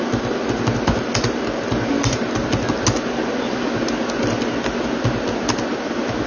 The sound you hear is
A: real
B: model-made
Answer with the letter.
A